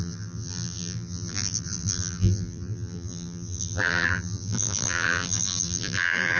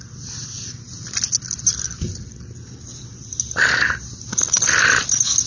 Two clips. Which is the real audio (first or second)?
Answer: second